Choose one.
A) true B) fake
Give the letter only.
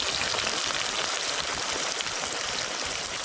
A